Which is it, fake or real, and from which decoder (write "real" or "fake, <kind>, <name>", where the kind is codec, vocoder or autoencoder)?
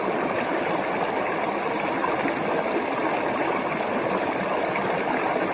real